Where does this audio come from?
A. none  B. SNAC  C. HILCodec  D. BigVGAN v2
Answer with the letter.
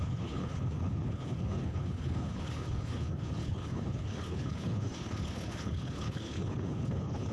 C